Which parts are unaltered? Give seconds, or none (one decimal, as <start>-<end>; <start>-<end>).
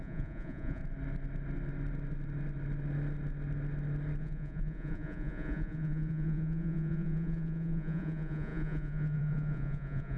0.8-4.2